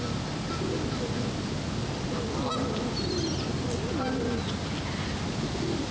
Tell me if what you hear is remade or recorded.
recorded